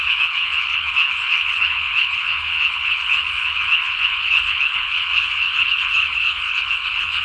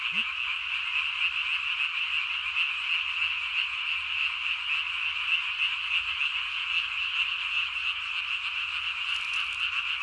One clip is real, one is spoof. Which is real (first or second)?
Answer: second